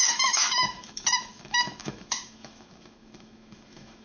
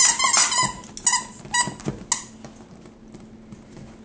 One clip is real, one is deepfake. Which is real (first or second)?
second